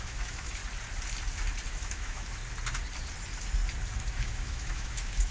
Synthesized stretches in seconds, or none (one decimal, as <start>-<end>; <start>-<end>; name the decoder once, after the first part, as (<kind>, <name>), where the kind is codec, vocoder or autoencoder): 0.0-0.6 (autoencoder, DAC-VAE); 1.7-2.4; 4.1-5.3